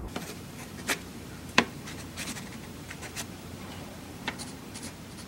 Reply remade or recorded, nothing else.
remade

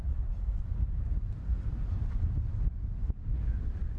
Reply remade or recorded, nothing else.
recorded